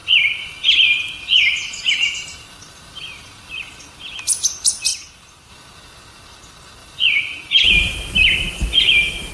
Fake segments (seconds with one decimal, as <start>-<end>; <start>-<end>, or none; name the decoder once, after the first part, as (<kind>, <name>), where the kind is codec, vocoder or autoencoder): 0.0-3.9 (vocoder, BigVGAN v2); 4.9-5.5; 6.8-9.3